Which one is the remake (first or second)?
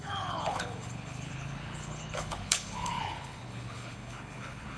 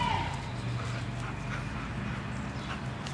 first